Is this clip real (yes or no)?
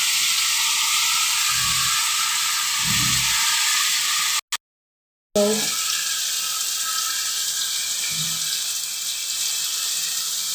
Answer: yes